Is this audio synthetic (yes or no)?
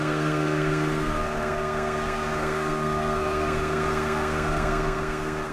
yes